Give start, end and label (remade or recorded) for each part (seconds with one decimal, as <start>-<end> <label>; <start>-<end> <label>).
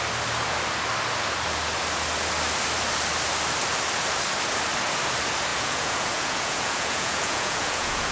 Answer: 0.0-5.5 recorded; 5.5-8.1 remade